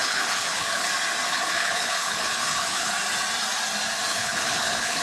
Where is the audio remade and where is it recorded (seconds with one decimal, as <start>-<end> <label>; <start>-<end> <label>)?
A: 0.0-0.9 remade; 0.9-1.3 recorded; 1.3-2.9 remade; 2.9-4.1 recorded; 4.1-5.0 remade